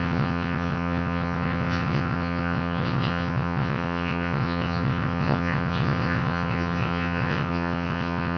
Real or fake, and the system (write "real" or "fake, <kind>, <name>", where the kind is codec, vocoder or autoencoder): fake, vocoder, WaveNeXt